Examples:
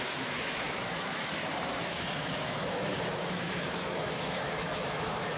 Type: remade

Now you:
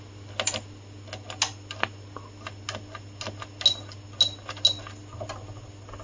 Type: recorded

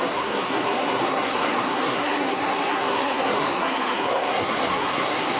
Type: remade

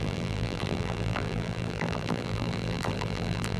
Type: remade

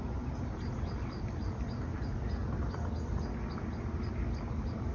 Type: recorded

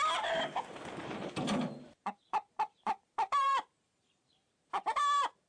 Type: remade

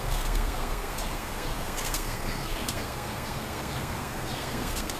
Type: remade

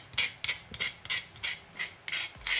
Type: recorded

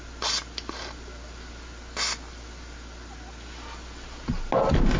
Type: recorded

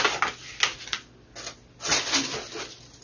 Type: recorded